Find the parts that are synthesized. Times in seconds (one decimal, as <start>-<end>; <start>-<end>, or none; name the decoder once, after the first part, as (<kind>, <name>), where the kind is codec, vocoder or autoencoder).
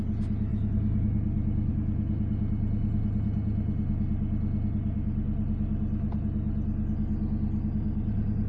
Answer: none